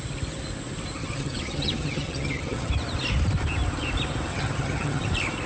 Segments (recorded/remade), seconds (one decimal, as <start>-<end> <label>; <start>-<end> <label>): 0.0-1.0 recorded; 1.0-2.7 remade; 2.7-4.3 recorded; 4.3-5.1 remade; 5.1-5.5 recorded